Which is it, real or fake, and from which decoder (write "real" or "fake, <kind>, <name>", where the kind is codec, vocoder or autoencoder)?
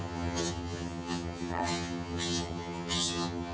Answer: fake, vocoder, HiFi-GAN